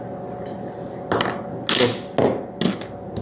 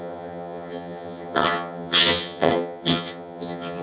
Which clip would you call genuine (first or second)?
first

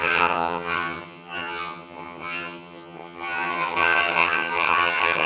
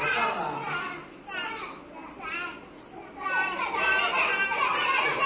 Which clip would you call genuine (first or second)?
second